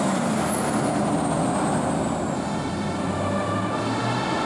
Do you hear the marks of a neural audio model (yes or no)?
no